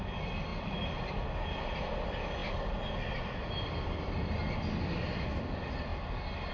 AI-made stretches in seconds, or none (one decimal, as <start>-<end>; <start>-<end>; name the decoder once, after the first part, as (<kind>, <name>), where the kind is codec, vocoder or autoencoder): 0.5-1.1 (vocoder, BigVGAN v2)